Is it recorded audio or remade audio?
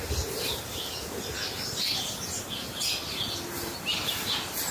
recorded